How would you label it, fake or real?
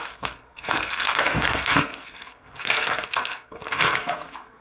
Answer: fake